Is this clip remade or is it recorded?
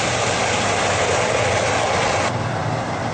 recorded